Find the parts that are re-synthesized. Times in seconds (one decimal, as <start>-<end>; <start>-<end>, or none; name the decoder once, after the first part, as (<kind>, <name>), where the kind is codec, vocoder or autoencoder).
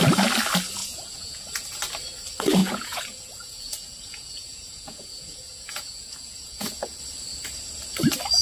0.8-1.4 (vocoder, Vocos); 2.6-7.0